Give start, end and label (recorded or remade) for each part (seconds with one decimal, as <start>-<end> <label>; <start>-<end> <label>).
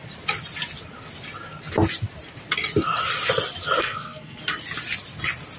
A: 0.0-3.8 recorded; 3.8-4.4 remade; 4.4-5.6 recorded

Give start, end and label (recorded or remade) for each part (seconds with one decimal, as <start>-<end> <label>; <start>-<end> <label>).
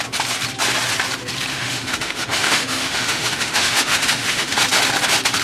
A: 0.0-1.5 recorded; 1.5-4.6 remade; 4.6-5.4 recorded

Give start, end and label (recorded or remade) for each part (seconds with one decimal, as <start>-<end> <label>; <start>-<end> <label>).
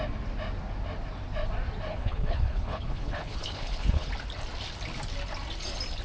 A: 0.0-1.9 recorded; 1.9-4.1 remade; 4.1-6.0 recorded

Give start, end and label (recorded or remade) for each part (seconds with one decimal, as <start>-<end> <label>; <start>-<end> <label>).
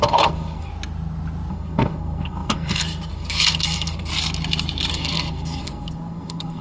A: 0.0-0.7 remade; 0.7-1.5 recorded; 1.5-4.1 remade; 4.1-4.9 recorded; 4.9-6.6 remade